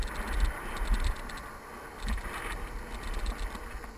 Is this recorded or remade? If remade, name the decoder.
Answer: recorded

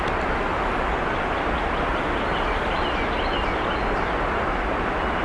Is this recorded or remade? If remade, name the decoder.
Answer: recorded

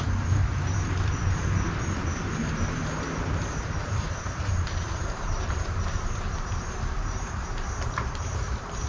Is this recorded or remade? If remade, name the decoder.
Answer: remade, vocoder, BigVGAN v2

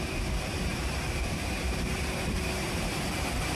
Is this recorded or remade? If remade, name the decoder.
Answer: remade, vocoder, BigVGAN v2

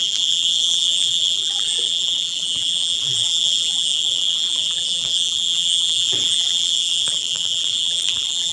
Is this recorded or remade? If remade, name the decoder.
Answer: remade, vocoder, BigVGAN v2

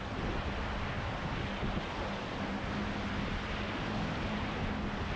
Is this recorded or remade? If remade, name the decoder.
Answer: recorded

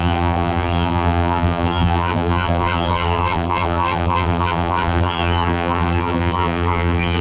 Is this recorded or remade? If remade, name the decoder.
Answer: remade, vocoder, BigVGAN v2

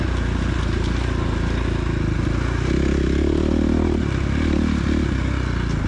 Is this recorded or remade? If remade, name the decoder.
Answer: recorded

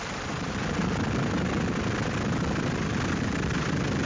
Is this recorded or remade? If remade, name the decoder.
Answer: recorded